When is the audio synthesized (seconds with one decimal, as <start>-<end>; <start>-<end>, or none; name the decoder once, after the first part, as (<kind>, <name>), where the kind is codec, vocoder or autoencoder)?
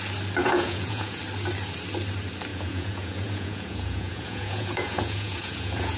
0.4-1.2 (vocoder, Vocos); 2.5-6.0